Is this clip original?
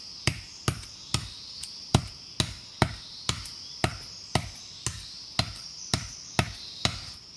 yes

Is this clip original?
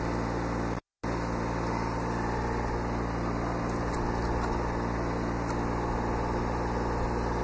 yes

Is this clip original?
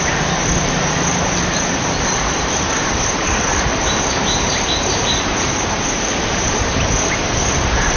no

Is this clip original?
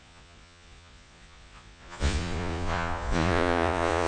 no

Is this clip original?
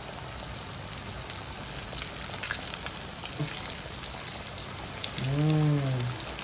yes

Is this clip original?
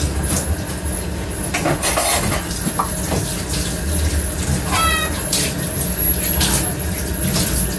yes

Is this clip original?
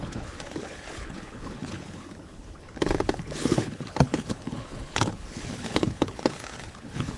no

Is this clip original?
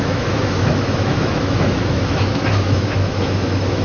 no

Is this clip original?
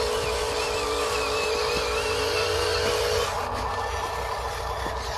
yes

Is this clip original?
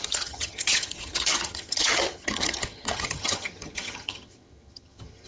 no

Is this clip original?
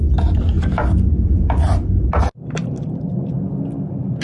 yes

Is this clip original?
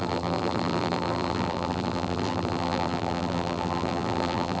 no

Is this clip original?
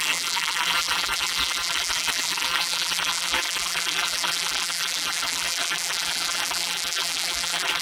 no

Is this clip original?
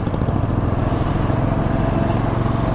yes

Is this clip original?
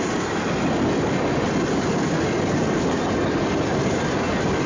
no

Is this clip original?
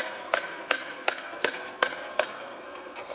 no